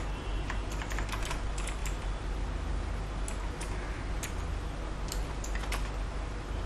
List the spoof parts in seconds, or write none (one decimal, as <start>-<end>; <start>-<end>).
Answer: none